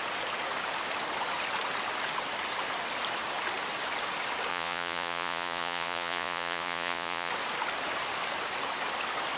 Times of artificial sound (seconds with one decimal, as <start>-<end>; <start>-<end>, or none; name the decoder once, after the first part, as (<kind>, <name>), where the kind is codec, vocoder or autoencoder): 4.5-7.3 (vocoder, Vocos)